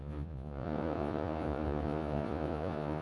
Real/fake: fake